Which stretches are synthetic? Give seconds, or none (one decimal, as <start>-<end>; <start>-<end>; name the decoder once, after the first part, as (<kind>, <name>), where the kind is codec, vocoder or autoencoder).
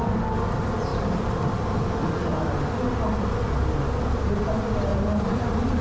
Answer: 0.9-2.0 (vocoder, BigVGAN v2); 4.9-5.8